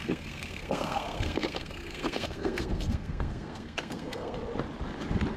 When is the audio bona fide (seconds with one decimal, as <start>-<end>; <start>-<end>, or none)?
4.4-5.4